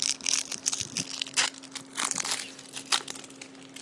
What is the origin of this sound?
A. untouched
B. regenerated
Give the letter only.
A